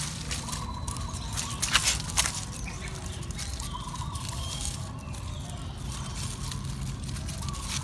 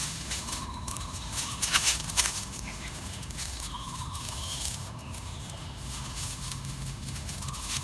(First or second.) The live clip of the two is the first